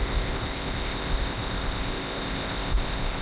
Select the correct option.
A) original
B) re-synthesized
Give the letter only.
B